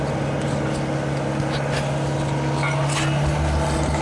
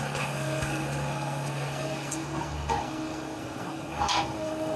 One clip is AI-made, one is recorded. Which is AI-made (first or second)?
second